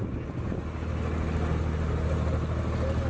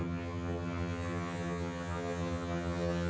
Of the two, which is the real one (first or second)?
first